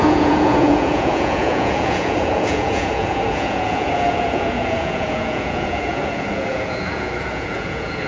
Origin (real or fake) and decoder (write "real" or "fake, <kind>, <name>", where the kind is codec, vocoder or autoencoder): fake, vocoder, Vocos